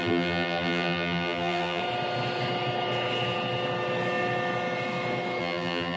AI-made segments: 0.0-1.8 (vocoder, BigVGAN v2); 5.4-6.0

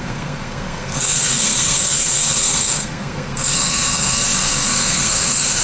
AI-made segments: 0.0-5.6 (codec, SNAC)

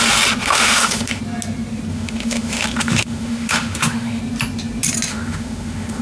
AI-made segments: 0.4-1.2 (autoencoder, DAC-VAE); 1.9-4.2; 5.1-6.0

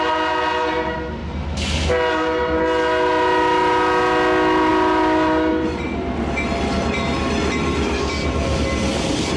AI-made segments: none

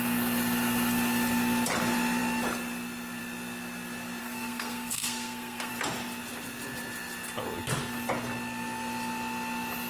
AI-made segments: 4.2-5.7 (codec, SNAC)